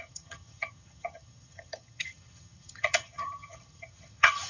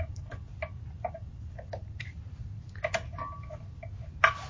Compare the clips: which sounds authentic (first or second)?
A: second